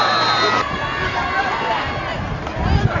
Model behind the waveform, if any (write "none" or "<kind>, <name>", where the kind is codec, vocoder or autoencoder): none